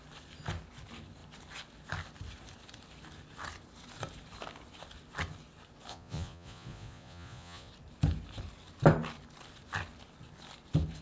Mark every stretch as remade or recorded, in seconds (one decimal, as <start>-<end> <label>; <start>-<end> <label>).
0.0-5.9 recorded; 5.9-7.7 remade; 7.7-11.0 recorded